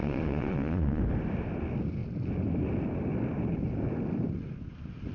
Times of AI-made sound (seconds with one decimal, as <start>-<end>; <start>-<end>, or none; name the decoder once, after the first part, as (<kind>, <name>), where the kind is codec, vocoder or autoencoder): 0.0-1.0 (vocoder, Vocos)